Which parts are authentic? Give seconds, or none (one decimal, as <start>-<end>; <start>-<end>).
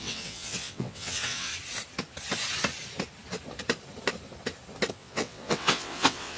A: 1.5-4.9